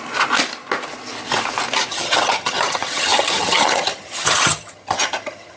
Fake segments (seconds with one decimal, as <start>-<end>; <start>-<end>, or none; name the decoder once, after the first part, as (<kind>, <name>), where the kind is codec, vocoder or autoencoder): 1.9-5.6 (vocoder, HiFi-GAN)